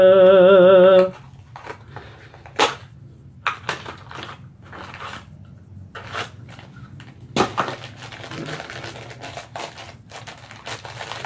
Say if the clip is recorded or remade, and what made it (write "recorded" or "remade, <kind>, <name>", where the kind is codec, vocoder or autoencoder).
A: recorded